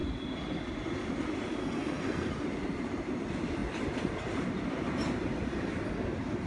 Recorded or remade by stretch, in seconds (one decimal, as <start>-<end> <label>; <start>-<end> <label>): 0.0-1.6 recorded; 1.6-2.3 remade; 2.3-6.5 recorded